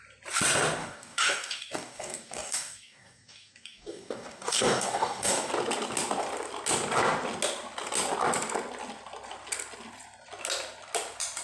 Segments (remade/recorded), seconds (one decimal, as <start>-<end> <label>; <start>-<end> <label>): 0.0-0.8 recorded; 0.8-5.5 remade; 5.5-11.4 recorded